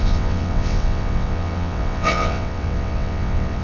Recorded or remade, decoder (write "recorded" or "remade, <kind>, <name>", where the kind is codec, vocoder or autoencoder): remade, vocoder, WaveNeXt